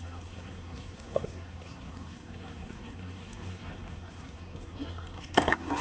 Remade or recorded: remade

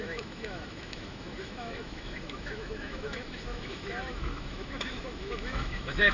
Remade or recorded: remade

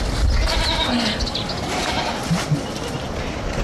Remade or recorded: recorded